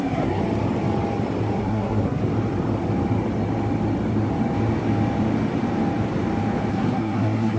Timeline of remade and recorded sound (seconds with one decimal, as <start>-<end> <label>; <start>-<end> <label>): 0.0-0.4 remade; 0.4-1.6 recorded; 1.6-2.2 remade; 2.2-6.7 recorded; 6.7-7.6 remade